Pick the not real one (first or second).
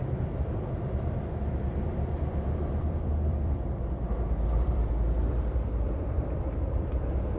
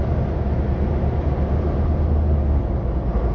first